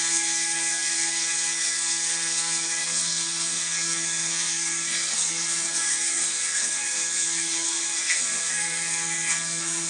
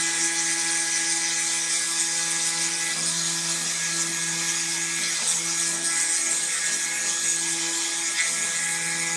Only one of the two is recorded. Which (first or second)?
second